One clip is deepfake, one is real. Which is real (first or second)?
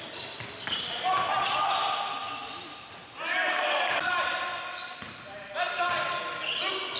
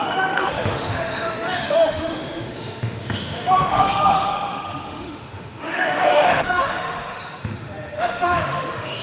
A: first